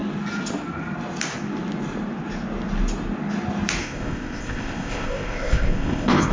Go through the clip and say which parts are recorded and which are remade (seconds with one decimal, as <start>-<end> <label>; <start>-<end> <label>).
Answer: 0.0-3.8 recorded; 3.8-6.3 remade